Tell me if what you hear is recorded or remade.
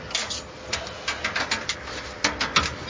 recorded